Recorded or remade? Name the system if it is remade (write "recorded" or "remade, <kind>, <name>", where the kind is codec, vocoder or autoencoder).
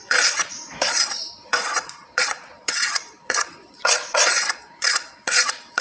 remade, vocoder, Vocos